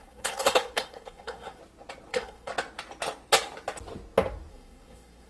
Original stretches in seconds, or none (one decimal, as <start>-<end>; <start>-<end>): 1.6-2.1; 2.5-4.5